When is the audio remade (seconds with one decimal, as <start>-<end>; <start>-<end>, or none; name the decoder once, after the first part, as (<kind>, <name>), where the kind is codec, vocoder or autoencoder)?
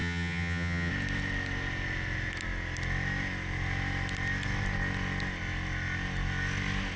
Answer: 0.0-0.9 (vocoder, HiFi-GAN)